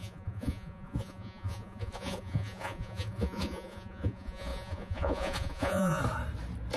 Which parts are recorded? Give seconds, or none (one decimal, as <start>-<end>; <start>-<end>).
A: 6.0-6.8